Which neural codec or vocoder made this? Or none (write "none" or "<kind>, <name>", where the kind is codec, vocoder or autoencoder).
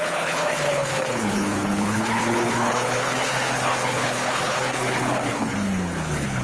codec, HILCodec